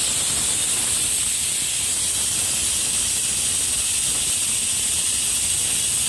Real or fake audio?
real